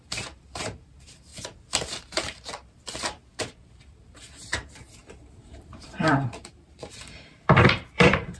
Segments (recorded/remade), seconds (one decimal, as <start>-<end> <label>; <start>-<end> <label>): 0.0-1.3 remade; 1.3-3.7 recorded; 3.7-8.4 remade